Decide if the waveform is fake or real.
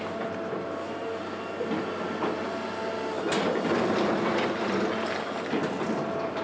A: real